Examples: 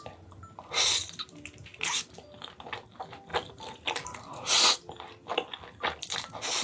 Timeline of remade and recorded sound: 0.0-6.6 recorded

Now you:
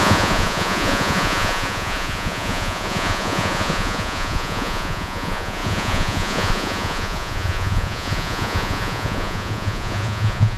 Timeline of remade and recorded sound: 0.0-10.6 remade

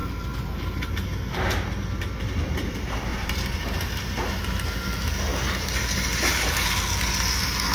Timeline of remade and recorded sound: 0.0-3.1 recorded; 3.1-4.4 remade; 4.4-5.3 recorded; 5.3-6.7 remade; 6.7-7.7 recorded

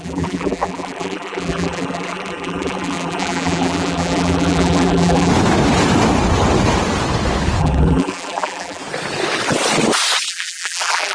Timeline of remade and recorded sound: 0.0-5.3 remade; 5.3-7.6 recorded; 7.6-8.8 remade; 8.8-10.3 recorded; 10.3-11.1 remade

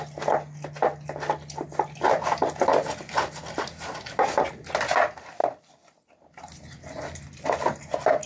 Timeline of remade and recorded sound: 0.0-8.3 recorded